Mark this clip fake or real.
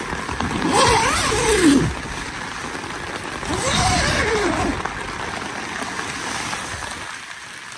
real